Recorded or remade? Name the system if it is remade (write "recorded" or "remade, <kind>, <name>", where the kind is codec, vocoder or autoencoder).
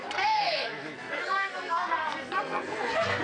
remade, codec, SNAC